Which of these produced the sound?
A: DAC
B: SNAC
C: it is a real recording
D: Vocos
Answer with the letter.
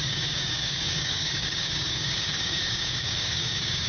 A